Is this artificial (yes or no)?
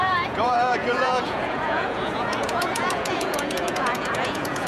yes